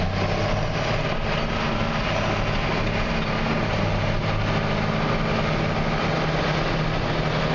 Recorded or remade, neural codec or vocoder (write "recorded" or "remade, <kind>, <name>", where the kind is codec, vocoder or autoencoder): recorded